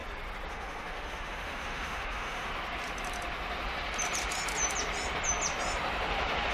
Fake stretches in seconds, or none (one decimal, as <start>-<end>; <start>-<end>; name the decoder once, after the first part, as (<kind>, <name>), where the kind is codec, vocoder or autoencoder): 0.5-2.5 (autoencoder, DAC-VAE)